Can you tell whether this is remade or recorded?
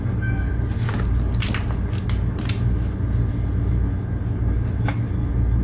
recorded